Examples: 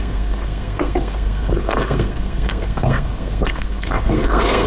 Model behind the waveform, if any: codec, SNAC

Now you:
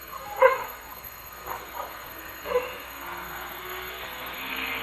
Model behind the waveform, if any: codec, SNAC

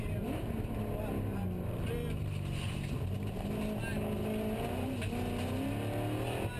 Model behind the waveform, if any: none